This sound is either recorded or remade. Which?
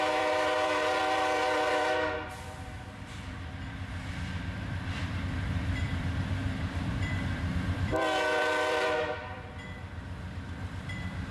remade